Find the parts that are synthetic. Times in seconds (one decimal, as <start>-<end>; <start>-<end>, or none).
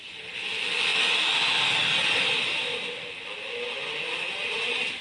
none